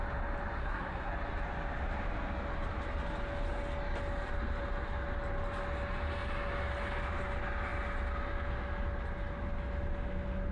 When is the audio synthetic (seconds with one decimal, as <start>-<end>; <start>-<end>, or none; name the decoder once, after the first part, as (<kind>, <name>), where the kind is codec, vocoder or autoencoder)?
0.6-1.1 (codec, SNAC)